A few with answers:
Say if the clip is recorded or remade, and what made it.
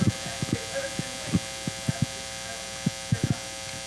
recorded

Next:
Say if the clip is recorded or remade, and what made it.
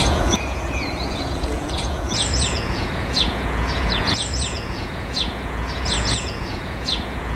remade, vocoder, Vocos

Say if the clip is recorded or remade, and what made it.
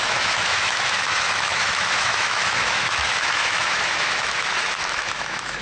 remade, autoencoder, DAC-VAE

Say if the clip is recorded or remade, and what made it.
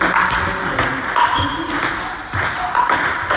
recorded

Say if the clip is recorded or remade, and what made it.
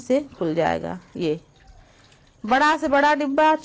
recorded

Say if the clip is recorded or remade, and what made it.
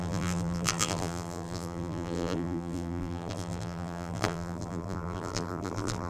remade, vocoder, BigVGAN v2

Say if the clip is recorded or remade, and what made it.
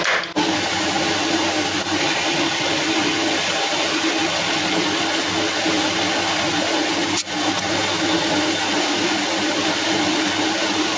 recorded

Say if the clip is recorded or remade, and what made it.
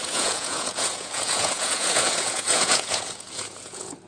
remade, vocoder, Vocos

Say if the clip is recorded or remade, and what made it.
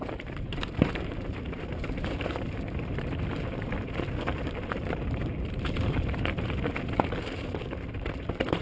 remade, vocoder, BigVGAN v2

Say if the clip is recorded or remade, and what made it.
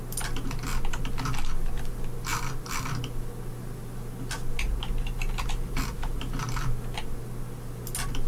recorded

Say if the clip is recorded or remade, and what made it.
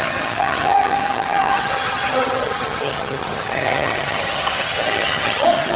remade, vocoder, HiFi-GAN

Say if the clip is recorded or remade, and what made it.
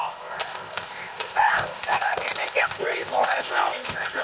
remade, codec, ZipCodec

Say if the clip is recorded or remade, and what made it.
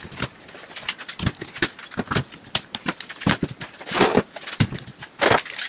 recorded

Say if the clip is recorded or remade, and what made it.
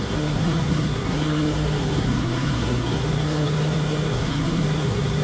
remade, codec, SNAC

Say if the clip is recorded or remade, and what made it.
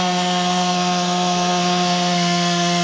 remade, codec, SNAC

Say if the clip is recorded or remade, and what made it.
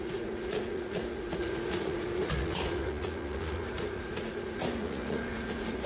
remade, vocoder, Vocos